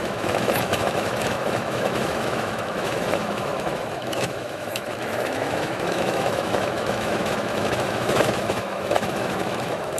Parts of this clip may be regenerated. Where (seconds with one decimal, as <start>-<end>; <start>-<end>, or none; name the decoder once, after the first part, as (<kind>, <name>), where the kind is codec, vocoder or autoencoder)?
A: 0.0-10.0 (autoencoder, DAC-VAE)